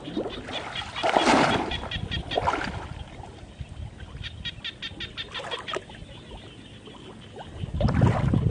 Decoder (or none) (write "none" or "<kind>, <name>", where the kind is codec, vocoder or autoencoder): none